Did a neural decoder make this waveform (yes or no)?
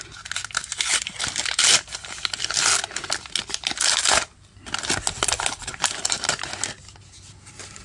no